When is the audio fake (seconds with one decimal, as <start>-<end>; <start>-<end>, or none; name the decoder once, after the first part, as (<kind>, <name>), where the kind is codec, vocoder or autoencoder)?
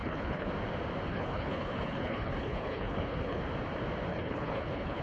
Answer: 0.0-0.5 (codec, HILCodec); 1.1-3.4; 4.1-5.0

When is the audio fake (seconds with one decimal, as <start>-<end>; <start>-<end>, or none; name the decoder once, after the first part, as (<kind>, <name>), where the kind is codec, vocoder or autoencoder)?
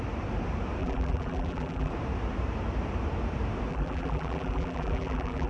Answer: 0.8-1.9 (vocoder, BigVGAN v2); 3.7-5.5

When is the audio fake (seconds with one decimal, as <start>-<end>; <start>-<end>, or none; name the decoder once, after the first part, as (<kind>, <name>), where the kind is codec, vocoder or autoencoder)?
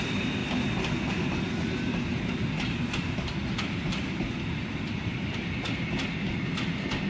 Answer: none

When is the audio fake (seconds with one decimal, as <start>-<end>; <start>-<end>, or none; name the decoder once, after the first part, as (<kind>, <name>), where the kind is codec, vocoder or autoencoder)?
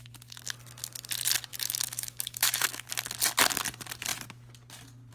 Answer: 1.5-2.9 (autoencoder, DAC-VAE)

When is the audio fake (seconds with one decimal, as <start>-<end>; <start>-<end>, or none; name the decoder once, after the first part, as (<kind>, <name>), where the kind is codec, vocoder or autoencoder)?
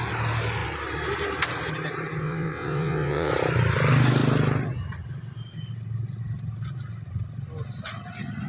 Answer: 2.2-3.3 (vocoder, WaveNeXt)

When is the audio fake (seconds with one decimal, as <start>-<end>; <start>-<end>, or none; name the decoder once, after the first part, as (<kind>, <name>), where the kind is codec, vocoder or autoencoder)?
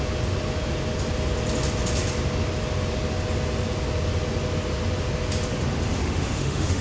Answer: 6.0-6.8 (autoencoder, DAC-VAE)